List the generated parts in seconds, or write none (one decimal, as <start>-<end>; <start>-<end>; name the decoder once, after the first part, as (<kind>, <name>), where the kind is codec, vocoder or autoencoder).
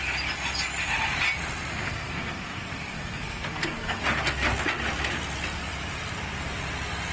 1.7-4.0 (codec, SNAC)